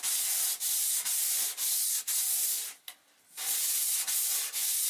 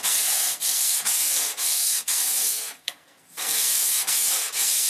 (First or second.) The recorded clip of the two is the first